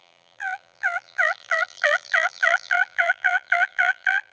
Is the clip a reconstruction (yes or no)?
yes